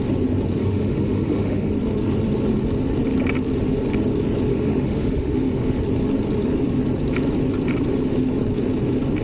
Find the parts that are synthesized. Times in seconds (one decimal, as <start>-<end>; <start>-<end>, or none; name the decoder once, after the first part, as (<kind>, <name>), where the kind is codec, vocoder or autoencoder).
0.6-1.7 (autoencoder, DAC-VAE); 4.5-5.8